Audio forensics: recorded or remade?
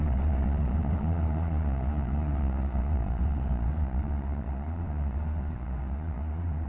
remade